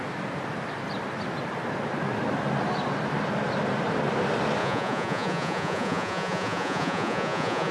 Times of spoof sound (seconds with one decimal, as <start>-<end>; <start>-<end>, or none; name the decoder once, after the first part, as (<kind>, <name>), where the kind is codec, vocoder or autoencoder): 4.6-7.7 (vocoder, Vocos)